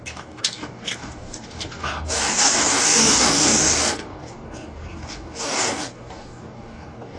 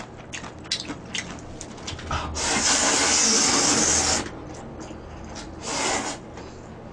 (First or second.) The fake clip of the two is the first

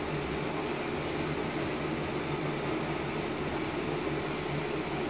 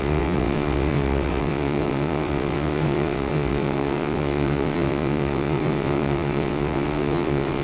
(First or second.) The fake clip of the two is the second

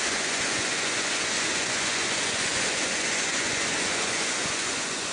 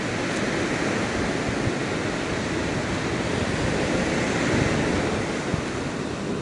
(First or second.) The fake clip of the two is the first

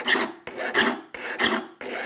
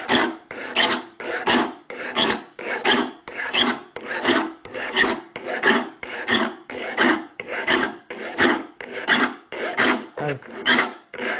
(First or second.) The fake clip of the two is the second